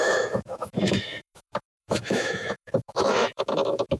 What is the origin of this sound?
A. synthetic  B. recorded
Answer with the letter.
A